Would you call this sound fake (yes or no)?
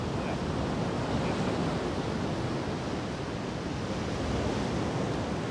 no